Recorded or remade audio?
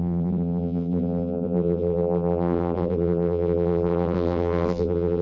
remade